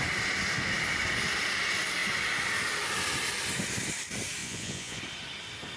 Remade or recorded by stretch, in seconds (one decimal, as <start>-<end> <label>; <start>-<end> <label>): 0.0-4.4 recorded; 4.4-5.0 remade; 5.0-5.8 recorded